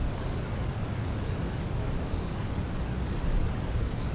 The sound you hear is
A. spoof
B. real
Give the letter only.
A